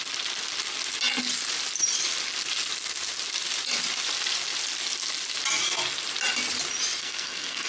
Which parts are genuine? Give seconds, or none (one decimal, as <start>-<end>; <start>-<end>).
0.0-7.0